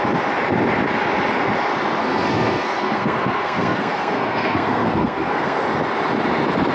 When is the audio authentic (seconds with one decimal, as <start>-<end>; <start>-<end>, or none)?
0.0-2.0; 5.6-6.7